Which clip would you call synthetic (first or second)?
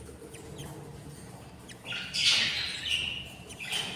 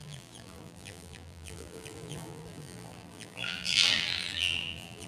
second